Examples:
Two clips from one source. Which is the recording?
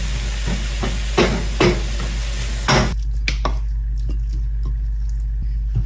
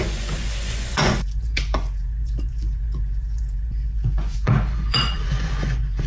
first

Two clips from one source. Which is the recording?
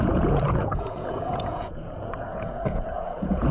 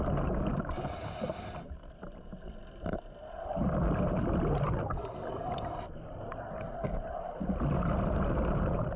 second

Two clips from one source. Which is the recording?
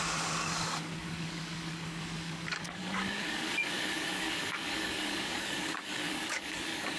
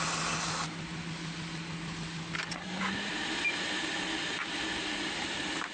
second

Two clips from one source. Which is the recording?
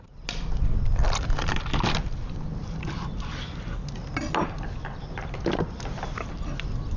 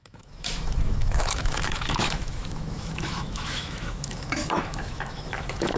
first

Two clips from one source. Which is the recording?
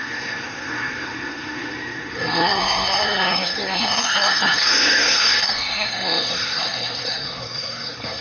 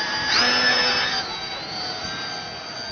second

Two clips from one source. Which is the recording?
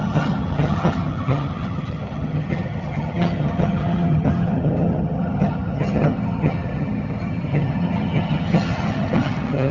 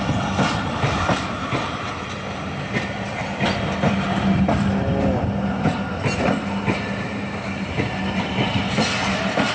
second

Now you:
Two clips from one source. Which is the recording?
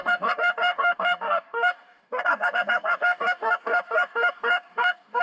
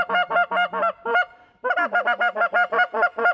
second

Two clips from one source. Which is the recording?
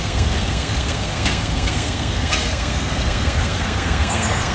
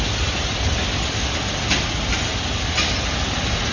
second